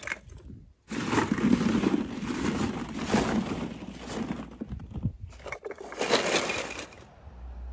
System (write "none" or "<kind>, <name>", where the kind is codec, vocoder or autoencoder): none